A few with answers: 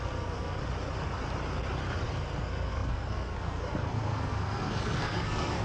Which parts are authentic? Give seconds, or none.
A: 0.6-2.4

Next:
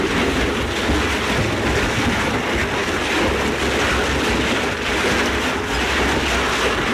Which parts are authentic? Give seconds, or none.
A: 0.0-6.9

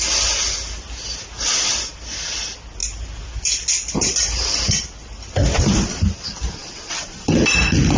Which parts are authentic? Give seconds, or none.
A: 0.0-8.0

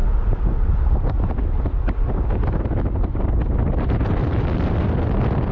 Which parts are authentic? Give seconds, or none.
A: 0.0-5.5

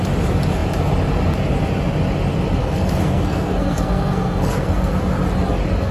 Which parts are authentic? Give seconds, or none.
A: 0.0-2.6; 5.0-5.9

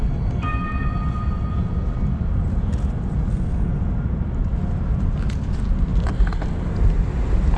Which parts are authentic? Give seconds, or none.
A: 0.0-3.3; 3.8-7.6